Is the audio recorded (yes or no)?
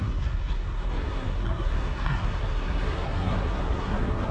no